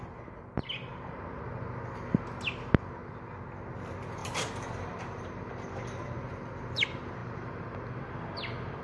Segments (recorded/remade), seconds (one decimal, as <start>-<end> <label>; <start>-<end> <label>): 0.0-0.9 recorded; 0.9-1.6 remade; 1.6-4.2 recorded; 4.2-5.5 remade; 5.5-7.2 recorded; 7.2-7.8 remade; 7.8-8.8 recorded